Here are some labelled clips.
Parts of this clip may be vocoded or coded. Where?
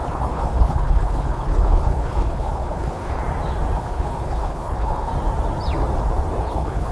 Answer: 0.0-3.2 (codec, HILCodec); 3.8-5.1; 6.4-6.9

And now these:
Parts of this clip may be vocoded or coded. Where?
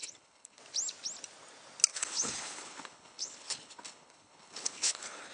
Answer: 0.0-0.6 (codec, HILCodec); 1.9-5.3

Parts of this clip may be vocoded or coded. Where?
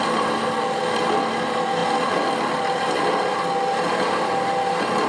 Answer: none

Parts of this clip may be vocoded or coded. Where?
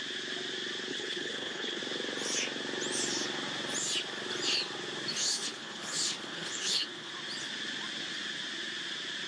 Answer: 0.9-1.8 (codec, HILCodec); 5.1-7.1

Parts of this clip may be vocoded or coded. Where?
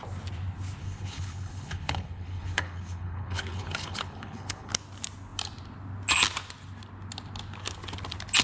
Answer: 0.8-4.7 (codec, HILCodec)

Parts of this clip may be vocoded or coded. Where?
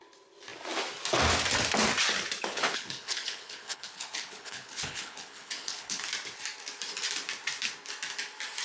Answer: 2.5-6.0 (codec, HILCodec)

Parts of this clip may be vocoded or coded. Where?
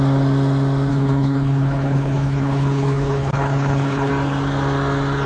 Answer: 0.9-4.1 (codec, HILCodec)